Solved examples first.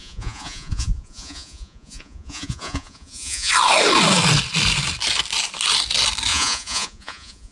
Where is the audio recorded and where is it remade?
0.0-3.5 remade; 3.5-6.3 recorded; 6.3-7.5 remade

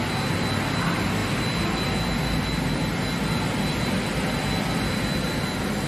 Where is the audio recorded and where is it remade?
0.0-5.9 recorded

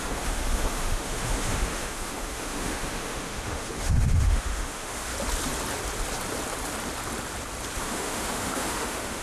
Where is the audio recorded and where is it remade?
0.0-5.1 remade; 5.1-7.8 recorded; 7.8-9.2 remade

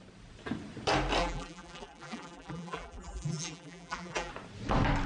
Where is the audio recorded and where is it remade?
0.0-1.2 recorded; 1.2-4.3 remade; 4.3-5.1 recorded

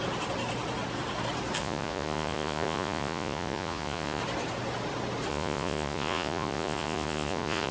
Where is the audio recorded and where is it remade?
0.0-1.6 recorded; 1.6-4.2 remade; 4.2-5.3 recorded; 5.3-7.7 remade